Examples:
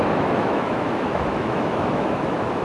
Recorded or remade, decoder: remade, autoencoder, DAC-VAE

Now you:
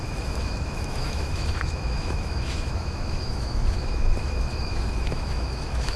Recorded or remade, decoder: remade, autoencoder, DAC-VAE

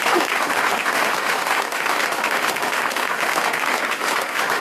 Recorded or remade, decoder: remade, autoencoder, DAC-VAE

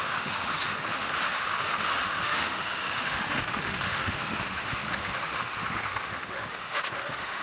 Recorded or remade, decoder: remade, autoencoder, DAC-VAE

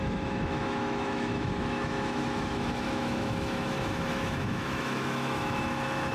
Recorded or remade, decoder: remade, autoencoder, DAC-VAE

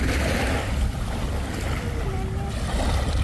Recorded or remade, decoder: recorded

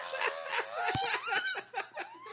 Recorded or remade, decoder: recorded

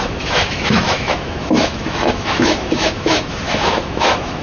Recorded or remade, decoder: remade, autoencoder, DAC-VAE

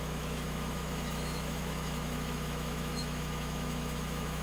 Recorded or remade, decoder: remade, autoencoder, DAC-VAE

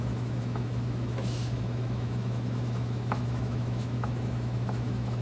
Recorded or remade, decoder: remade, autoencoder, DAC-VAE